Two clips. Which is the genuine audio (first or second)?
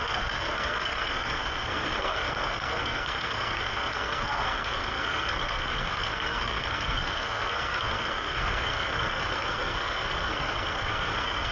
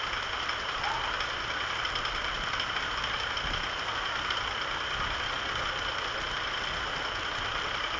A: second